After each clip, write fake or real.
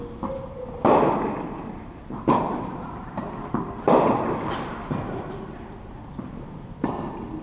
real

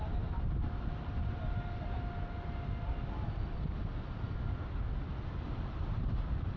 real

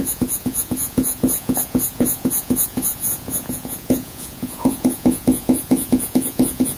fake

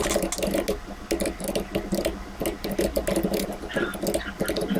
real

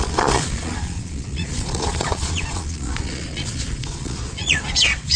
fake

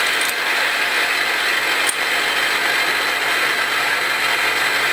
real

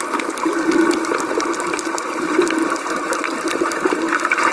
real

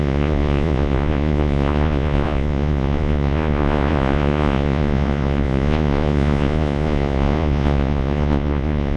fake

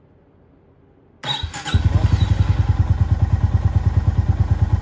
real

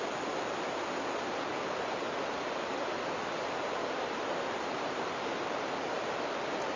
real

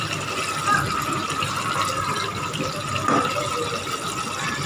real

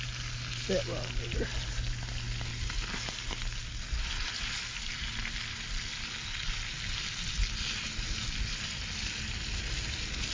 real